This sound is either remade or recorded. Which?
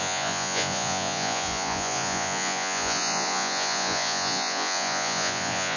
remade